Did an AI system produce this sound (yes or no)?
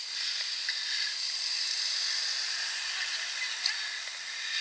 no